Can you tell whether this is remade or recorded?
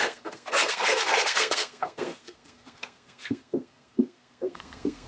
remade